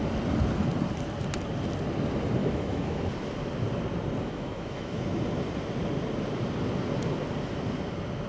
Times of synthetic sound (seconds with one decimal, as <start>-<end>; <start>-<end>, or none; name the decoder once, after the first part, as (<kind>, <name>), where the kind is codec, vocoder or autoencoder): 2.4-3.0 (autoencoder, DAC-VAE); 4.2-5.0